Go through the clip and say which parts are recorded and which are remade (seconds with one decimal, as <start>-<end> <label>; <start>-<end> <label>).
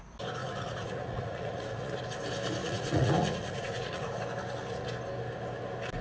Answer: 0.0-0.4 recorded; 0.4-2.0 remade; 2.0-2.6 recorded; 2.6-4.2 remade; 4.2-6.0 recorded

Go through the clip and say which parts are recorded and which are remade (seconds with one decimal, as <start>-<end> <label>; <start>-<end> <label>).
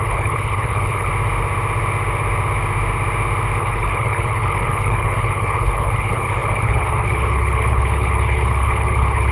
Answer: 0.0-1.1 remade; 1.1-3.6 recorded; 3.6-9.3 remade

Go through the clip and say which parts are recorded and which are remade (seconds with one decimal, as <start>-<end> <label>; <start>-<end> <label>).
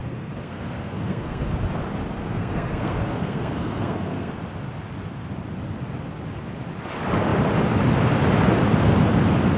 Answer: 0.0-1.5 remade; 1.5-2.2 recorded; 2.2-4.3 remade; 4.3-9.6 recorded